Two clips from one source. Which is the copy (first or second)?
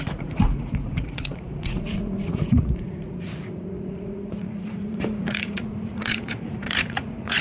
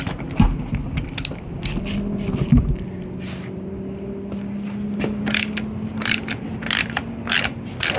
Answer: first